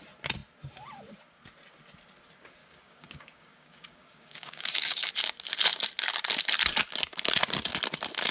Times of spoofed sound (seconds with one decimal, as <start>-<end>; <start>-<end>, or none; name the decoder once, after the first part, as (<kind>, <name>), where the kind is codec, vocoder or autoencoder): 2.6-5.1 (codec, DAC)